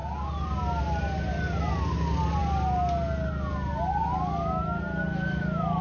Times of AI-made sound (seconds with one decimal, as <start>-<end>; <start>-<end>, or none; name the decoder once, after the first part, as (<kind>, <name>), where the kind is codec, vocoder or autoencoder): none